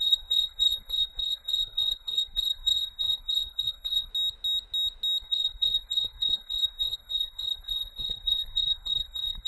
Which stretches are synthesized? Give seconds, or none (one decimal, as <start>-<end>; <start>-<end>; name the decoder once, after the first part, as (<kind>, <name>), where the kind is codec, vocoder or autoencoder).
0.0-4.1 (codec, SNAC); 5.2-9.5

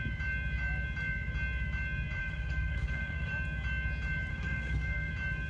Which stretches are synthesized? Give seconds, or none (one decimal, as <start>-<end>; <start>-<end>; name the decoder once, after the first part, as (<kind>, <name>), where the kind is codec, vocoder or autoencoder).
2.2-3.3 (codec, SNAC); 4.3-5.1

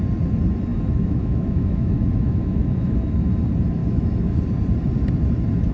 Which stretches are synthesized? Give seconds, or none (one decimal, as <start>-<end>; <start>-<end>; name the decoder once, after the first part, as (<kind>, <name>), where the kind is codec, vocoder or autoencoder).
0.7-3.3 (autoencoder, DAC-VAE); 3.8-4.4

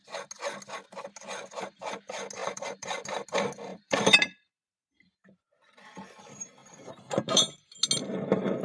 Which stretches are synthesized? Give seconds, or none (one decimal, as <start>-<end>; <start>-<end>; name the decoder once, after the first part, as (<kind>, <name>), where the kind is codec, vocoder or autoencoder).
2.4-3.0 (vocoder, BigVGAN v2); 3.7-4.9; 6.6-7.7